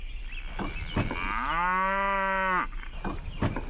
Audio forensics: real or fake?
real